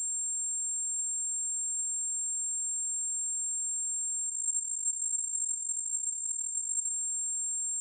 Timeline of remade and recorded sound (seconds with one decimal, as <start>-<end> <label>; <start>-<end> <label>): 0.0-4.3 recorded; 4.3-6.9 remade; 6.9-7.8 recorded